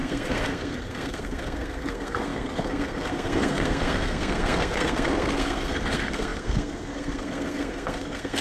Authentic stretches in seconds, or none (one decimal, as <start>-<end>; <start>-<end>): none